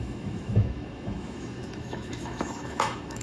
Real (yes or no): no